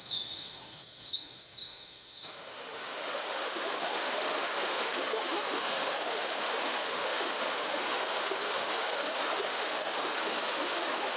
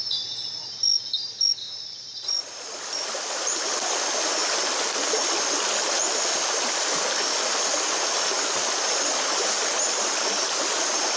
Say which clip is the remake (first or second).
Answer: first